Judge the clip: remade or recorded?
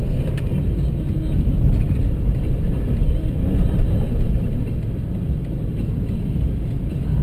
recorded